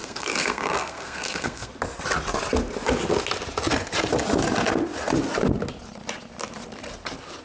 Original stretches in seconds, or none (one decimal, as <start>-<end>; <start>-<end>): 1.7-7.4